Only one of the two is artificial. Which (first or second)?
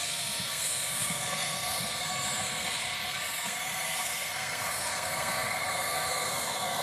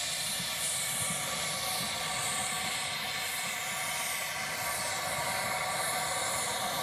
first